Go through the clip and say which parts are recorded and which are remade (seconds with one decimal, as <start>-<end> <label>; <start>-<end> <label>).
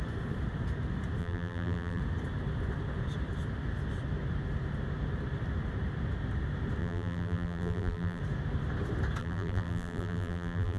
0.0-1.2 recorded; 1.2-2.0 remade; 2.0-6.8 recorded; 6.8-8.2 remade; 8.2-9.2 recorded; 9.2-10.8 remade